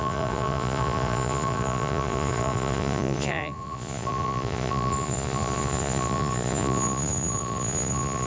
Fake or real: fake